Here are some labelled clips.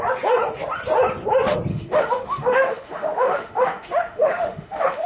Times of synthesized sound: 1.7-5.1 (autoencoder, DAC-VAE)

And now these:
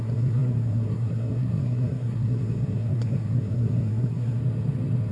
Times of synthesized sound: 0.0-4.4 (codec, SNAC)